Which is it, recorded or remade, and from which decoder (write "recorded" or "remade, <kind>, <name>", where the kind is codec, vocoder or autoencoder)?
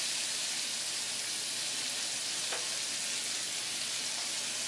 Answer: recorded